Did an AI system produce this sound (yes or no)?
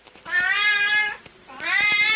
no